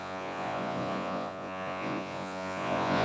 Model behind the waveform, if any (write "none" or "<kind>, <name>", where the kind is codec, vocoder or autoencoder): vocoder, Vocos